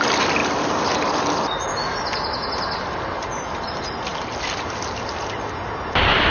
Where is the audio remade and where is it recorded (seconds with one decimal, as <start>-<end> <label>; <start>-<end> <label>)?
0.0-6.3 recorded